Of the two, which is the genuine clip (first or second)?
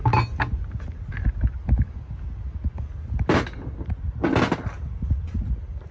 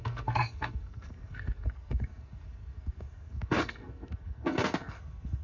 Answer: first